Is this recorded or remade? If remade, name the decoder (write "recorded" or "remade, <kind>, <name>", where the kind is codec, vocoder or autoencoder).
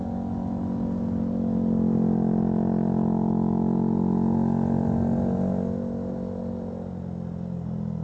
recorded